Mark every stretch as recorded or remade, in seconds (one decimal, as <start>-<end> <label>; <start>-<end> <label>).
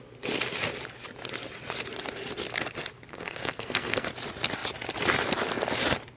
0.0-3.1 recorded; 3.1-4.1 remade; 4.1-6.2 recorded